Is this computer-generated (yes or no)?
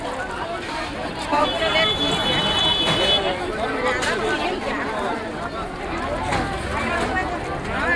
no